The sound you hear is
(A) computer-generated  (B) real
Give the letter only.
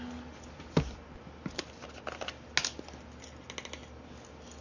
B